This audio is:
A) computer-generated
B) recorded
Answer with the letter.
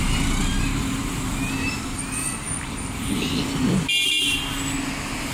B